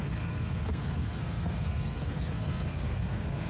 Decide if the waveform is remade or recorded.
remade